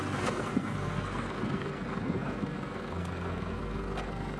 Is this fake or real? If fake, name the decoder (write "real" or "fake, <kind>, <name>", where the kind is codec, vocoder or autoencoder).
fake, codec, SNAC